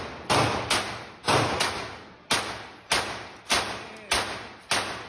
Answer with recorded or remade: recorded